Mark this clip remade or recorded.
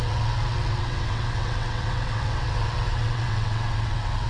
remade